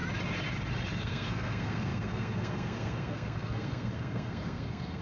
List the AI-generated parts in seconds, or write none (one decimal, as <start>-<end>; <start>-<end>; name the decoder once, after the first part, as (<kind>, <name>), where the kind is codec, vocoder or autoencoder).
1.0-5.0 (codec, SNAC)